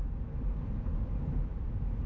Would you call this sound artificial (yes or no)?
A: no